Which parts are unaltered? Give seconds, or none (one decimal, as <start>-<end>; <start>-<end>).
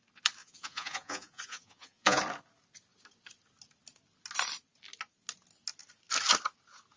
0.0-0.4; 2.2-7.0